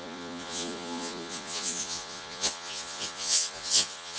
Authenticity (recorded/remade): remade